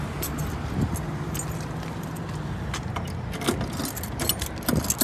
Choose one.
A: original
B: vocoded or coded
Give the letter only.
A